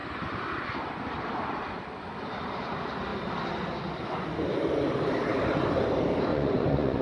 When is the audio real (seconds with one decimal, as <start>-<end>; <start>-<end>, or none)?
0.0-6.3